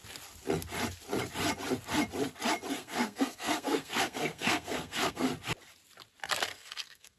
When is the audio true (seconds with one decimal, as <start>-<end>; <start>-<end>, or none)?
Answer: 0.0-2.7; 5.3-6.5